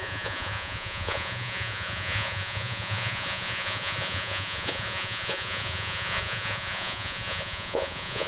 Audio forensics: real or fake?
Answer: fake